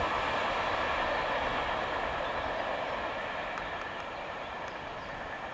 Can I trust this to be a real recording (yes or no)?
yes